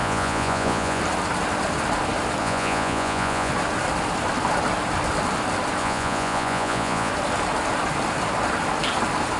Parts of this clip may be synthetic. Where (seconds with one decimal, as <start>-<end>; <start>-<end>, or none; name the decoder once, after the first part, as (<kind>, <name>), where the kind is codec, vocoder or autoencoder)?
0.0-1.0 (vocoder, Vocos); 2.4-3.5; 5.8-7.1